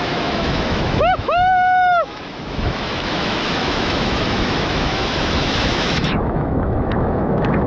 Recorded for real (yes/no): no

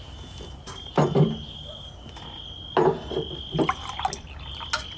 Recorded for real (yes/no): yes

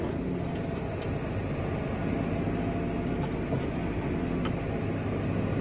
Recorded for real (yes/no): yes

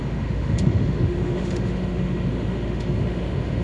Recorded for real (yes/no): no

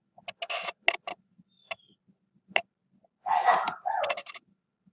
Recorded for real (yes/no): yes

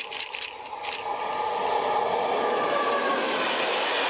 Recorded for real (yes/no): yes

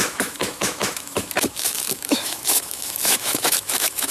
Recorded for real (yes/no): no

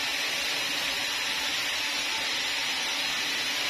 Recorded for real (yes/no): yes